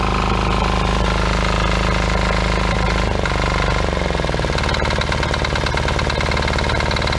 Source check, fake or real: real